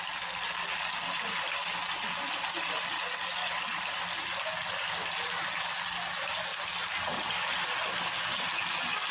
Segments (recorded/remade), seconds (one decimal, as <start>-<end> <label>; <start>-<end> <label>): 0.0-9.1 recorded